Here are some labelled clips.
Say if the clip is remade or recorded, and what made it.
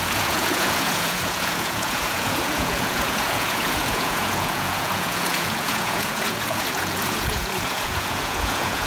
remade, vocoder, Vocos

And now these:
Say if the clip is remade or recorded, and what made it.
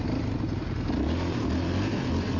recorded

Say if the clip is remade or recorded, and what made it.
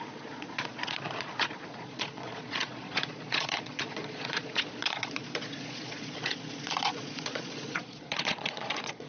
remade, vocoder, Vocos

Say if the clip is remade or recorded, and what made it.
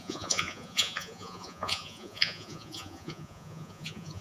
remade, vocoder, Vocos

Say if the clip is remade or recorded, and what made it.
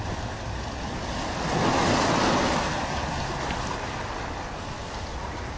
recorded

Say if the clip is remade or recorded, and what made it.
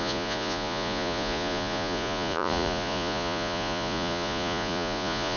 remade, vocoder, Vocos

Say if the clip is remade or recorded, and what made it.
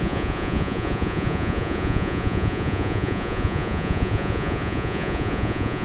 remade, vocoder, Vocos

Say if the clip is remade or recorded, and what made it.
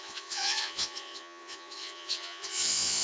remade, vocoder, Vocos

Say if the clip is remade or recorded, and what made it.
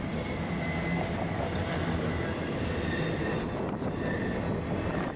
recorded